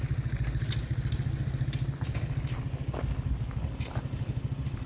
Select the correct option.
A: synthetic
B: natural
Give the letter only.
B